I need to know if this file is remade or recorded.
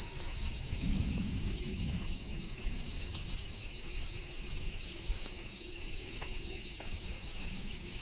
remade